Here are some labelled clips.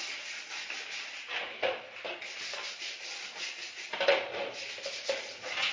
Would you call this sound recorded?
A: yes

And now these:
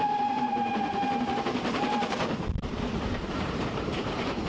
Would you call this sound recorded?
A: no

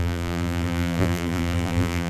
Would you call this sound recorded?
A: no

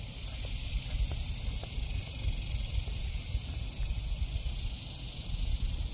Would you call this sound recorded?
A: yes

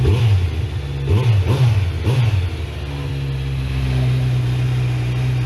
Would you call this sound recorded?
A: yes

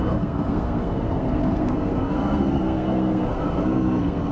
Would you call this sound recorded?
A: no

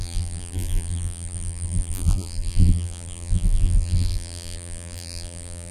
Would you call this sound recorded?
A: no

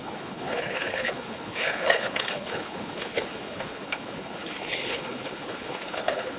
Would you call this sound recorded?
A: no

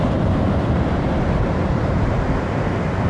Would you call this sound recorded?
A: no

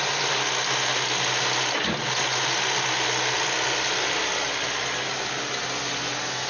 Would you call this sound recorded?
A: yes